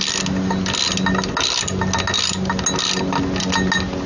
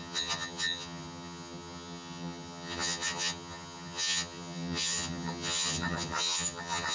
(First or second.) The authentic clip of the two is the first